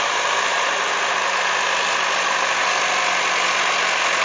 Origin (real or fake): real